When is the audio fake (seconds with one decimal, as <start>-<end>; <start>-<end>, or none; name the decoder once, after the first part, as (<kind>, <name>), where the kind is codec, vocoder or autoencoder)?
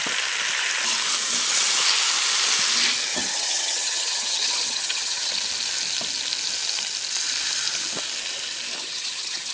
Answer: 3.1-5.3 (vocoder, HiFi-GAN); 8.8-9.5